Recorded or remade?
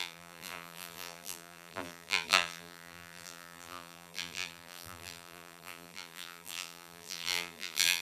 remade